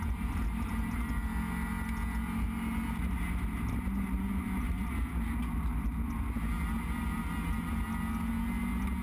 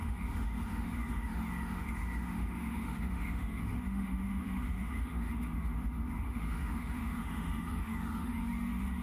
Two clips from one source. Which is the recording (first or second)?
first